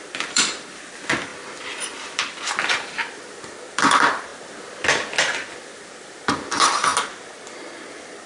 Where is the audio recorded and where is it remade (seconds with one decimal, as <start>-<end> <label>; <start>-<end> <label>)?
0.0-4.3 remade; 4.3-6.5 recorded; 6.5-6.9 remade; 6.9-7.9 recorded; 7.9-8.3 remade